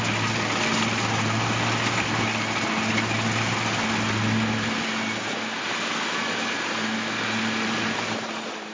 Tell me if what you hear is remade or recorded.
recorded